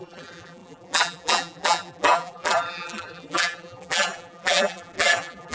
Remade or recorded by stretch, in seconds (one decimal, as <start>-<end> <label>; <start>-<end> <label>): 0.0-5.5 remade